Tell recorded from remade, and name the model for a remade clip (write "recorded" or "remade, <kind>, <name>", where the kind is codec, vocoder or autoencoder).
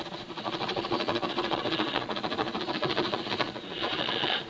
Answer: remade, vocoder, Vocos